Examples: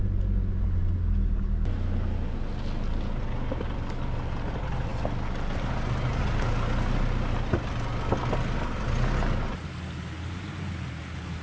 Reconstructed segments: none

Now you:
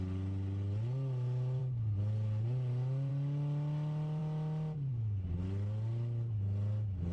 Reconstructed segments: none

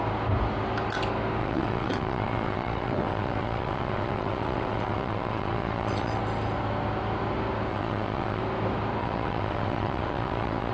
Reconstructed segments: 1.4-6.2 (vocoder, WaveNeXt); 7.7-8.4; 9.0-10.7

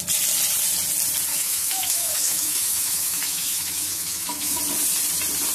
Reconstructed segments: 1.3-4.6 (autoencoder, DAC-VAE)

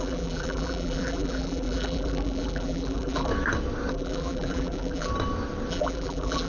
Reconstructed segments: 0.0-3.3 (vocoder, BigVGAN v2); 3.9-5.1; 5.7-6.5

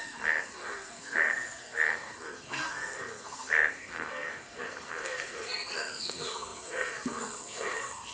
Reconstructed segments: 0.0-8.1 (codec, SNAC)